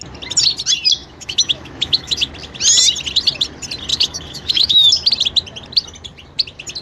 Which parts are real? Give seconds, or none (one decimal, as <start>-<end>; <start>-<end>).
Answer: 0.0-1.0; 2.3-3.9; 4.9-6.8